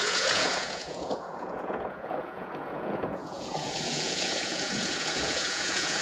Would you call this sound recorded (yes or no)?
no